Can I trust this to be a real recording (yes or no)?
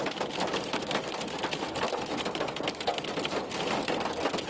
yes